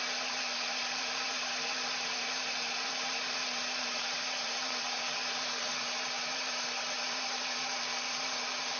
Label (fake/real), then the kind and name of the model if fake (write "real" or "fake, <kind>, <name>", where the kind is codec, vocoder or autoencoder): fake, vocoder, BigVGAN v2